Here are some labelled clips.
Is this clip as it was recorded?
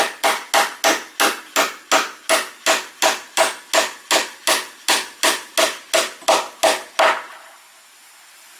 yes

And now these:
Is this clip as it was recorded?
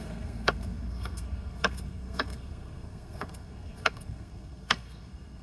no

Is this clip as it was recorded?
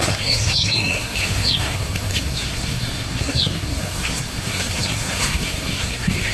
no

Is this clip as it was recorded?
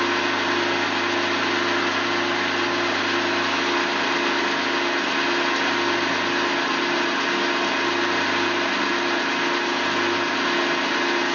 yes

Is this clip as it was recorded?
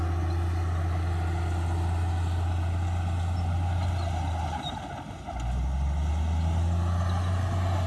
yes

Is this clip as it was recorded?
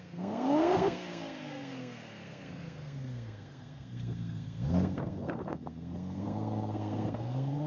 no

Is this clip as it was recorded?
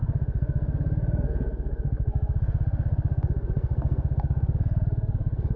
no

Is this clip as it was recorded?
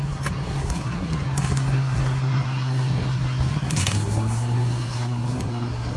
no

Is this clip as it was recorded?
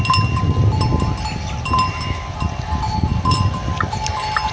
yes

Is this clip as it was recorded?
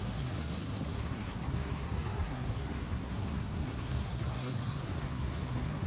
no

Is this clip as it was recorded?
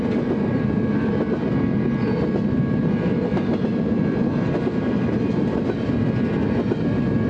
yes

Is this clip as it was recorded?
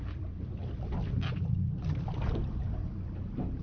yes